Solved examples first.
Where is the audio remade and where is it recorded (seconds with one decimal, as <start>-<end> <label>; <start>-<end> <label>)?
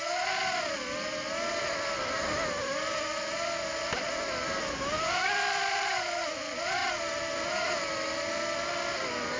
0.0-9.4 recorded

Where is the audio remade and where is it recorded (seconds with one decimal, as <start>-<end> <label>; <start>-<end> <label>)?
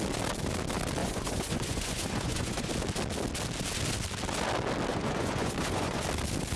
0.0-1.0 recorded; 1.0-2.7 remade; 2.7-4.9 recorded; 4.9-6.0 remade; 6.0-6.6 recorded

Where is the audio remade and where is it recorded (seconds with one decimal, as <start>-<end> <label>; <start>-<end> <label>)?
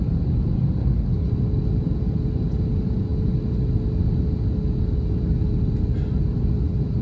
0.0-0.8 recorded; 0.8-1.3 remade; 1.3-7.0 recorded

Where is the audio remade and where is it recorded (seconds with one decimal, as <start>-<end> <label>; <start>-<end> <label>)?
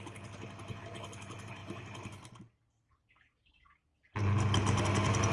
0.0-5.3 recorded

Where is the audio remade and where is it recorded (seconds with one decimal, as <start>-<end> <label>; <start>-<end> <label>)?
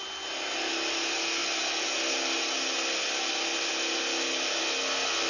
0.0-5.3 recorded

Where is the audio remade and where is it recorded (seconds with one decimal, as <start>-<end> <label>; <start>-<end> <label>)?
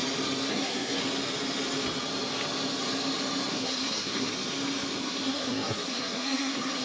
0.0-0.5 recorded; 0.5-1.0 remade; 1.0-3.5 recorded; 3.5-4.3 remade; 4.3-5.0 recorded; 5.0-6.8 remade